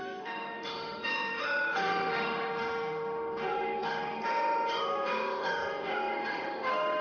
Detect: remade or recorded remade